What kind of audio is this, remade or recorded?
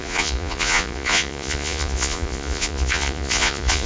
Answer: remade